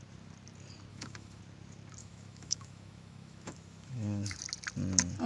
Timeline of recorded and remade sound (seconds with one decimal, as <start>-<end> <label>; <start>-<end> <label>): 0.0-0.9 recorded; 0.9-1.4 remade; 1.4-2.0 recorded; 2.0-4.4 remade; 4.4-5.3 recorded